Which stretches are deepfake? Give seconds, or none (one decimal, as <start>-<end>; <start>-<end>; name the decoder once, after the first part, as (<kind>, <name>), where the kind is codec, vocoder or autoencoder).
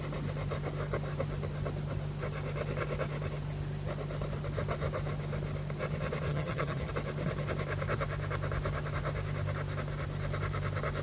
6.3-6.9 (vocoder, HiFi-GAN)